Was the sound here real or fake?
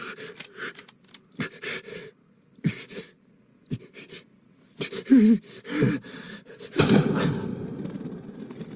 real